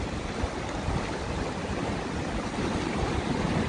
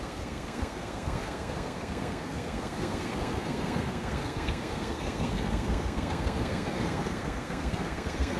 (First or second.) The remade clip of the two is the second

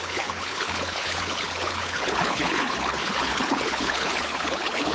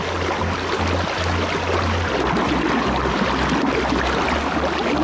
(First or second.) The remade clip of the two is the first